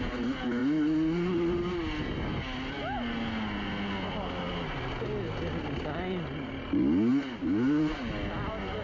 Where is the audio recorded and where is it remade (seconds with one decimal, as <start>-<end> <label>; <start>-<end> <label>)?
0.0-8.8 recorded